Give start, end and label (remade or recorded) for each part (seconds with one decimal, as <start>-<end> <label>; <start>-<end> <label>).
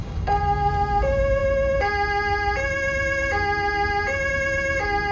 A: 0.0-0.7 remade; 0.7-5.1 recorded